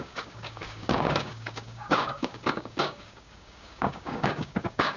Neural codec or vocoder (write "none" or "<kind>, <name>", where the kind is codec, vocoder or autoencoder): codec, DAC